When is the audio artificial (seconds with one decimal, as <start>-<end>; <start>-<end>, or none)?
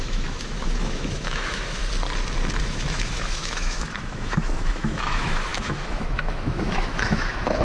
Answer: 0.0-1.8; 2.6-7.6